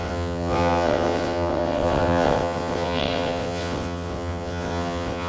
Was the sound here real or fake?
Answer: fake